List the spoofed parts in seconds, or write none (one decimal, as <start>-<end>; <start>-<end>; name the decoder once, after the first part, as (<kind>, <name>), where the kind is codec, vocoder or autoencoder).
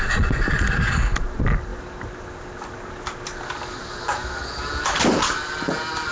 none